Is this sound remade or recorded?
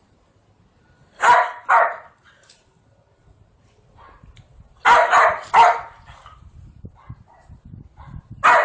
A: recorded